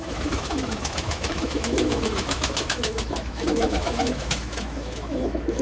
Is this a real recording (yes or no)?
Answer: no